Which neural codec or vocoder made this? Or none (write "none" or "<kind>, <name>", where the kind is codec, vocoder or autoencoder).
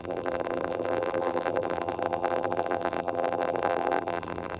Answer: vocoder, BigVGAN v2